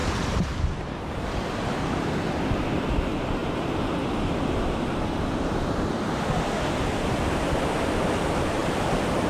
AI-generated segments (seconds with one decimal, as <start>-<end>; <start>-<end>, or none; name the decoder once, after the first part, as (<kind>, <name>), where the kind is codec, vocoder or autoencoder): 0.0-1.3 (vocoder, BigVGAN v2); 8.6-9.3